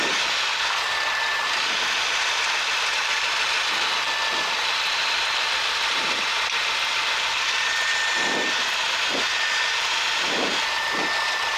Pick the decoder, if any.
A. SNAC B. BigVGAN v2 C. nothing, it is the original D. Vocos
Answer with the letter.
C